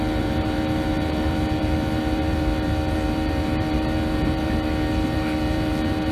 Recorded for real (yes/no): no